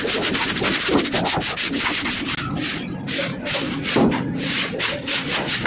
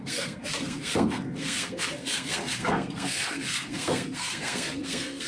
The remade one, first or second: second